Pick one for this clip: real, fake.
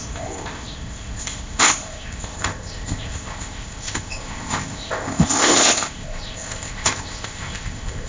fake